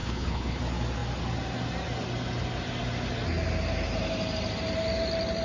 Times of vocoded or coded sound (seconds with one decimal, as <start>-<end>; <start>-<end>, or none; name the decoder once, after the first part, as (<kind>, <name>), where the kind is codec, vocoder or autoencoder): 0.0-0.6 (codec, HILCodec)